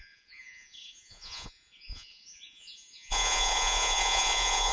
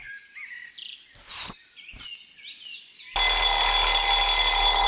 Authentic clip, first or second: second